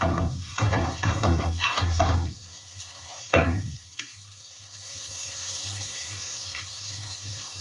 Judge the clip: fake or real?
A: fake